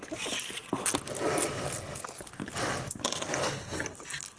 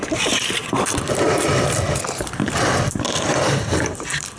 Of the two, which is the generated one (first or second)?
second